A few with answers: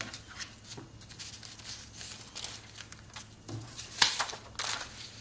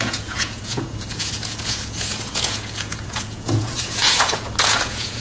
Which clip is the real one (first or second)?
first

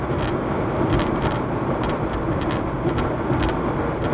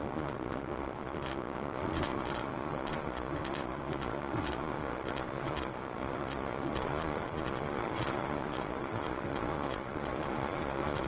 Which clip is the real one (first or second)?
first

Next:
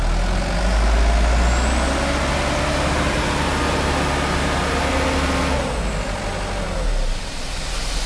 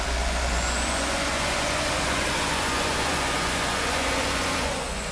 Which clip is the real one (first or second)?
first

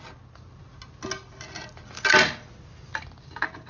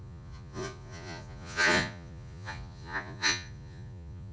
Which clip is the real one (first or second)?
first